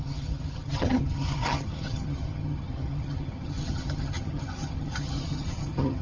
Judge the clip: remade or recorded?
remade